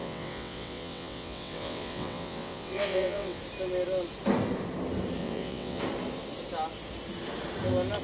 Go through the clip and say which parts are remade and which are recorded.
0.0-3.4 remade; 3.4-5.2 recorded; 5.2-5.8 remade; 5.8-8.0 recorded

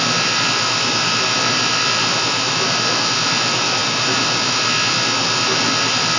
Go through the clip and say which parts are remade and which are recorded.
0.0-6.2 recorded

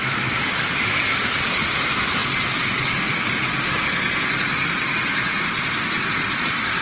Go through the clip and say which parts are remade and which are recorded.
0.0-2.2 remade; 2.2-6.3 recorded; 6.3-6.8 remade

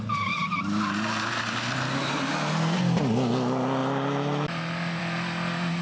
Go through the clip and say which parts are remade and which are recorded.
0.0-5.8 recorded

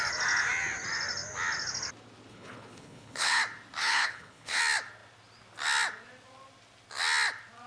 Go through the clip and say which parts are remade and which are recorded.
0.0-2.3 recorded; 2.3-3.4 remade; 3.4-3.8 recorded; 3.8-4.6 remade; 4.6-7.7 recorded